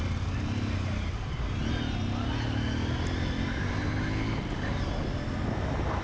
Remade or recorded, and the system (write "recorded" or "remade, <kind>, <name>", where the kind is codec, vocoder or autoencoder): recorded